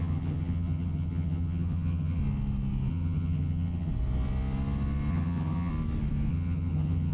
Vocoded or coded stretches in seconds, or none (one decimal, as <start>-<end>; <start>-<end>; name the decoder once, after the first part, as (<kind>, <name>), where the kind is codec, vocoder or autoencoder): 0.0-2.2 (vocoder, HiFi-GAN); 2.9-3.9; 5.1-5.7; 6.3-7.1